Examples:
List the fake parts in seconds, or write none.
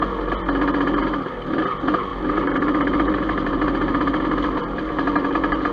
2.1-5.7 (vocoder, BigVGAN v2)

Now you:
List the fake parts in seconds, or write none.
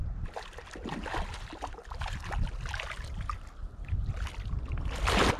3.6-4.7 (vocoder, BigVGAN v2)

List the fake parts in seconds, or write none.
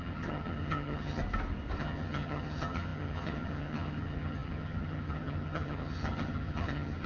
0.0-1.2 (vocoder, HiFi-GAN); 1.8-7.1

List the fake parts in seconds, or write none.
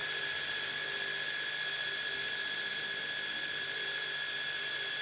none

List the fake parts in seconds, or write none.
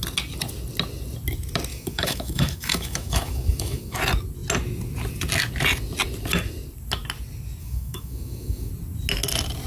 1.7-4.0 (autoencoder, DAC-VAE); 7.6-8.7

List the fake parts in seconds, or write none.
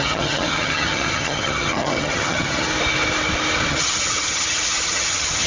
0.0-2.7 (vocoder, HiFi-GAN); 3.7-5.5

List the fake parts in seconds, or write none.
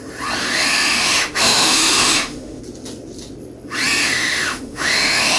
0.4-2.6 (autoencoder, DAC-VAE); 4.0-5.4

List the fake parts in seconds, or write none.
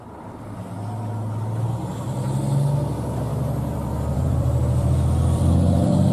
3.3-6.1 (vocoder, BigVGAN v2)